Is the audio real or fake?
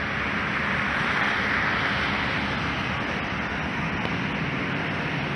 real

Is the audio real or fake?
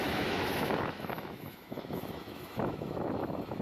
fake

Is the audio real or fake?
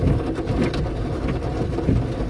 real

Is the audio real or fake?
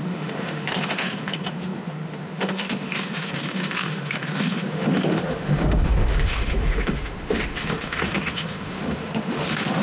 fake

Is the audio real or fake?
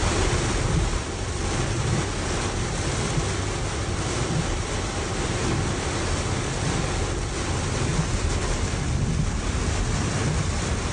real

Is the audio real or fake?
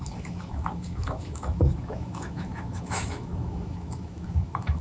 fake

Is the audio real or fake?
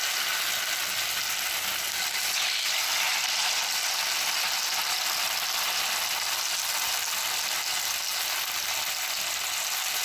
real